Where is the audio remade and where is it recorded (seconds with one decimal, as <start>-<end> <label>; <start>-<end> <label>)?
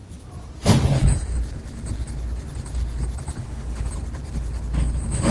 0.0-3.4 recorded; 3.4-3.9 remade; 3.9-5.3 recorded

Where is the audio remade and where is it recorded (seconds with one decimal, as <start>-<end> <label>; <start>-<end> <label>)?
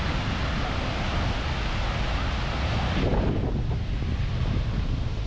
0.0-0.4 remade; 0.4-2.7 recorded; 2.7-3.1 remade; 3.1-4.3 recorded; 4.3-5.3 remade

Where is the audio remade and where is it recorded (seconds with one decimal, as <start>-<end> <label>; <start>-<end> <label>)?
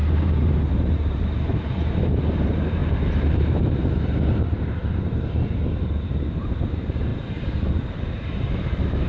0.0-9.1 remade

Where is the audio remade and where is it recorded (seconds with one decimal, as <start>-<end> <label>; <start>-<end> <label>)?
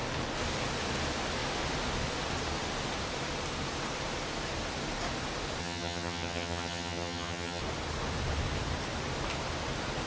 0.0-5.6 recorded; 5.6-7.6 remade; 7.6-10.1 recorded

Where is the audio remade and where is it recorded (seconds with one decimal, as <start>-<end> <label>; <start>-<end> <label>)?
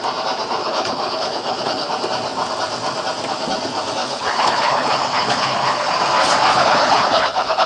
0.0-0.6 recorded; 0.6-1.9 remade; 1.9-4.0 recorded; 4.0-5.9 remade; 5.9-6.5 recorded; 6.5-7.7 remade